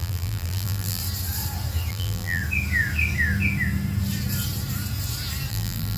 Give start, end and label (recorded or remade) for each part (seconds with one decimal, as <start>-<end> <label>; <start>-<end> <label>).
0.0-1.0 remade; 1.0-1.9 recorded; 1.9-2.4 remade; 2.4-5.5 recorded; 5.5-6.0 remade